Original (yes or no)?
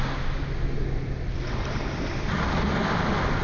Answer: yes